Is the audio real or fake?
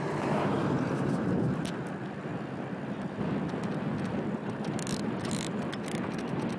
real